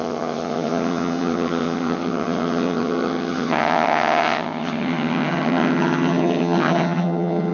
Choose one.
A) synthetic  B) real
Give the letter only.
A